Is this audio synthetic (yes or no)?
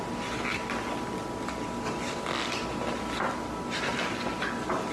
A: no